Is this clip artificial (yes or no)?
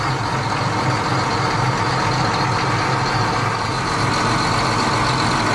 no